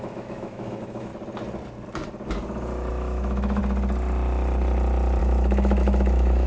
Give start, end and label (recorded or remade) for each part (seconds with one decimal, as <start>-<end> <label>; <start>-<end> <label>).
0.0-1.1 remade; 1.1-2.9 recorded; 2.9-3.6 remade; 3.6-5.2 recorded; 5.2-6.5 remade